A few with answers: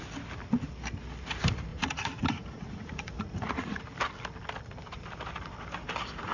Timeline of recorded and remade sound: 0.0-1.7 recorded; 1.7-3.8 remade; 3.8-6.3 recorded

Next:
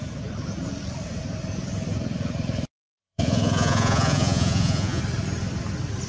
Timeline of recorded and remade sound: 0.0-3.0 recorded; 3.0-5.0 remade; 5.0-6.1 recorded

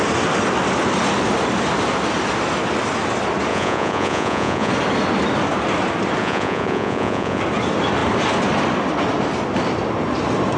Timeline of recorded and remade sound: 0.0-3.5 recorded; 3.5-4.7 remade; 4.7-6.2 recorded; 6.2-7.4 remade; 7.4-10.6 recorded

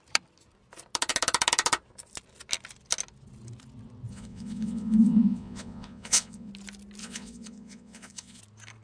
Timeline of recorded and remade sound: 0.0-4.1 recorded; 4.1-6.5 remade; 6.5-7.0 recorded; 7.0-8.4 remade; 8.4-8.8 recorded

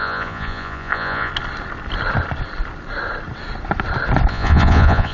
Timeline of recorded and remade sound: 0.0-1.3 remade; 1.3-4.3 recorded; 4.3-5.1 remade

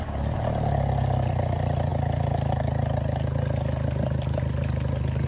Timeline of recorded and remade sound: 0.0-5.3 recorded